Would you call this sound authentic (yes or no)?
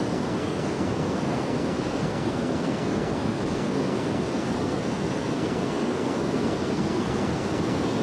no